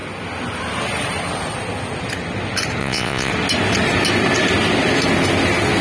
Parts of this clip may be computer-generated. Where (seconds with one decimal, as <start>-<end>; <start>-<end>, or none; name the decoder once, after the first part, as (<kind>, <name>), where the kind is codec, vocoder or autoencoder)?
2.8-3.3 (vocoder, Vocos)